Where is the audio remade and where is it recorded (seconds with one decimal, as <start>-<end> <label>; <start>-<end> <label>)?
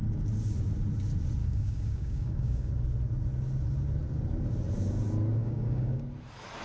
0.0-1.4 recorded; 1.4-2.7 remade; 2.7-5.4 recorded; 5.4-6.0 remade; 6.0-6.6 recorded